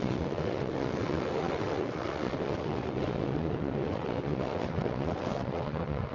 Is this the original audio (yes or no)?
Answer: no